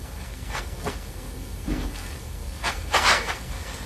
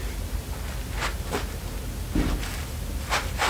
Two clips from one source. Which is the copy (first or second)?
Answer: first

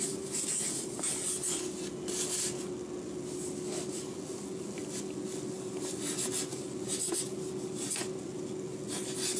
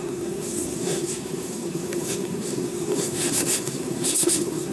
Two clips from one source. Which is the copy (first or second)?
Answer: second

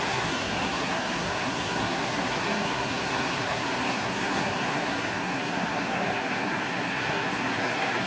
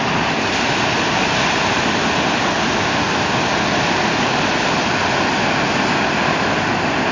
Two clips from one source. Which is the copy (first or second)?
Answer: first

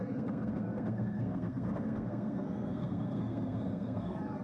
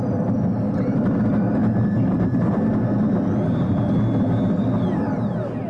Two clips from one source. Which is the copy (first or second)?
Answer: first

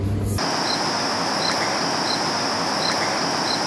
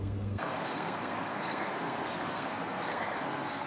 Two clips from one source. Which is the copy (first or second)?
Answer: second